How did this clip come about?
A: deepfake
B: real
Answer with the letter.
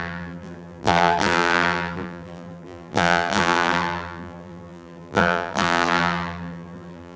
A